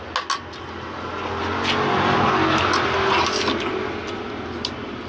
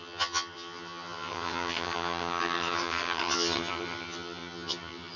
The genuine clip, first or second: first